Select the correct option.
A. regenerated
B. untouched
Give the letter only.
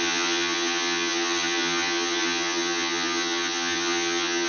A